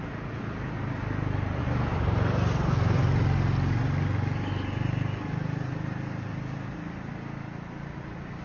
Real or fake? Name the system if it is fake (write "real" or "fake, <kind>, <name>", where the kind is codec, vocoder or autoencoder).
real